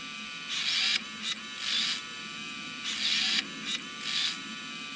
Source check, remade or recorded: recorded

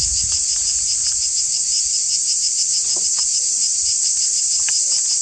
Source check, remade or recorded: recorded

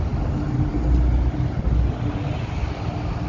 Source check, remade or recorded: recorded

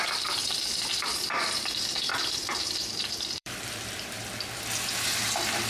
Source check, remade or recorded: remade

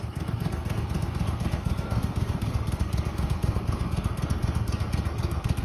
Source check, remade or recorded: remade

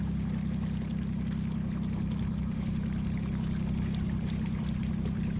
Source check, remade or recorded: recorded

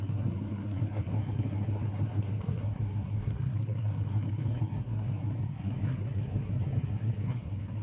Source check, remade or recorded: remade